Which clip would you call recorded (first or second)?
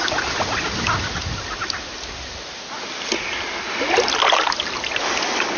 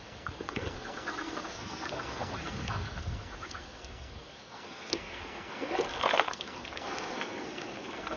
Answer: first